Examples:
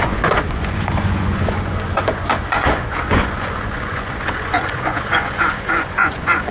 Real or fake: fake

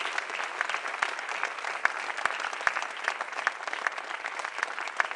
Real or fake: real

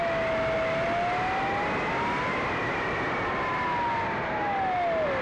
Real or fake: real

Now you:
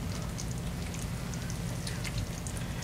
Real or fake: real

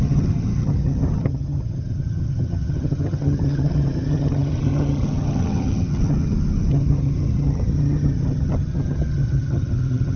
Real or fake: fake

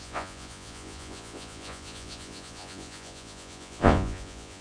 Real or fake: fake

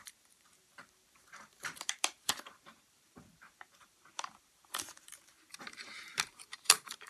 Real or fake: fake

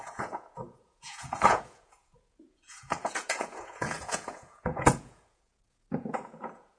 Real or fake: fake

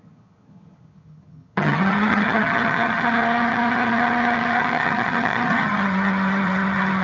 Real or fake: fake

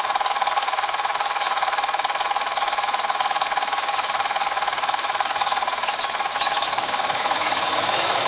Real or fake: fake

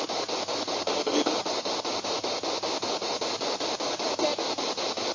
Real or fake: real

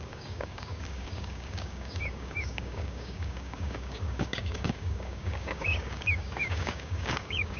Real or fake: fake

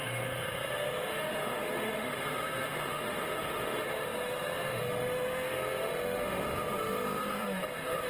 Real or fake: fake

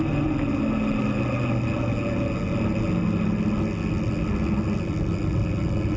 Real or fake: real